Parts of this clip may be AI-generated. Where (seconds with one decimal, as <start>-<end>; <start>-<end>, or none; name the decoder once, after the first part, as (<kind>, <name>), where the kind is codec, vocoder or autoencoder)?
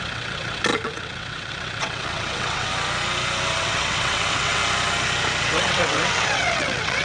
0.0-2.7 (vocoder, WaveNeXt); 3.6-4.6; 5.4-7.0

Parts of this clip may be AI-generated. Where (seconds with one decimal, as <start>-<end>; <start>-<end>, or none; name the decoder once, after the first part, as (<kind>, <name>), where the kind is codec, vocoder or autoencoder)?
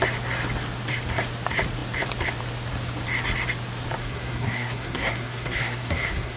4.0-6.4 (codec, SNAC)